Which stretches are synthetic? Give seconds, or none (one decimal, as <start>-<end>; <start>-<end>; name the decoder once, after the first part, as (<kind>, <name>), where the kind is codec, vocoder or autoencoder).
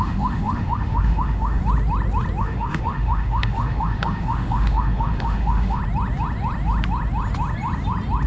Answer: 0.0-1.6 (autoencoder, DAC-VAE); 2.4-5.8